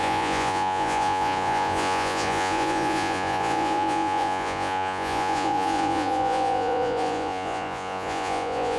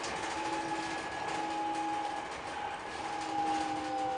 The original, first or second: second